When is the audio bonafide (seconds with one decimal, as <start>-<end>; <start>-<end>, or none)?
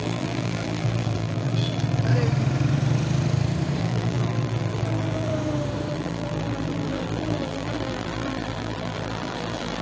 2.1-3.8; 5.3-5.9